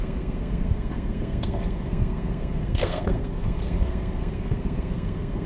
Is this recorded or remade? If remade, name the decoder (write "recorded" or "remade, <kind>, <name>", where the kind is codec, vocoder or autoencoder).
remade, codec, SNAC